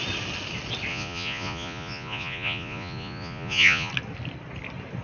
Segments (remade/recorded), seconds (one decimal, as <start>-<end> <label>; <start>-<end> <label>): 0.0-0.9 recorded; 0.9-3.9 remade; 3.9-5.0 recorded